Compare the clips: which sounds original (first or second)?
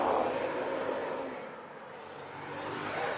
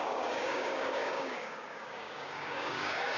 first